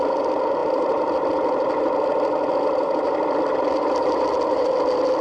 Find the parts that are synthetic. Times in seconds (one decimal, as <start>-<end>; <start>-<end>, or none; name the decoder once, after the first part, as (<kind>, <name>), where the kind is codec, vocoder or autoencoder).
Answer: none